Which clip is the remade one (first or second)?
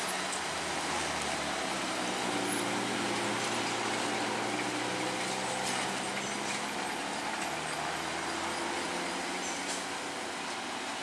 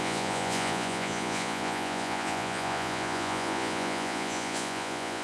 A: second